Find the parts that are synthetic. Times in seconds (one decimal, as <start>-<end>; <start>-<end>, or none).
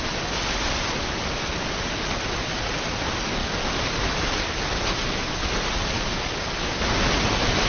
none